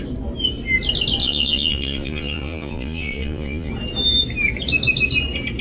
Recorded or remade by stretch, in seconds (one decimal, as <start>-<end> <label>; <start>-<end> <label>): 0.0-1.2 recorded; 1.2-3.7 remade; 3.7-5.6 recorded

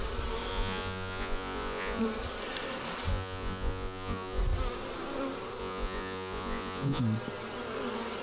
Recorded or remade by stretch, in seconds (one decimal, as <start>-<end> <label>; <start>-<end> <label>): 0.0-0.5 recorded; 0.5-2.0 remade; 2.0-3.1 recorded; 3.1-4.4 remade; 4.4-5.6 recorded; 5.6-7.0 remade; 7.0-8.2 recorded

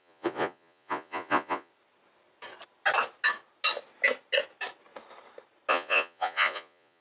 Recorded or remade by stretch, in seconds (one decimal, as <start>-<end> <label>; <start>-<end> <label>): 0.0-1.7 remade; 1.7-5.7 recorded; 5.7-7.0 remade